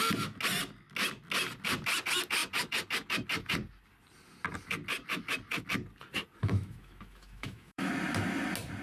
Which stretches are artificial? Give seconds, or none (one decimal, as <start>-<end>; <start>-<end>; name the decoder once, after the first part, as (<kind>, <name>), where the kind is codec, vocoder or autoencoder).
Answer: 6.4-7.9 (autoencoder, DAC-VAE)